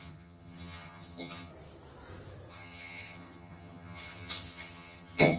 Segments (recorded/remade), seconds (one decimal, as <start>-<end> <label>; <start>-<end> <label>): 0.0-1.5 remade; 1.5-2.5 recorded; 2.5-5.4 remade